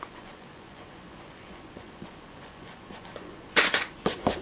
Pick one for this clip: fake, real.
fake